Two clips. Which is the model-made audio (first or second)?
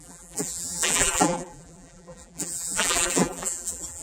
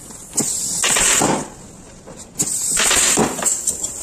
first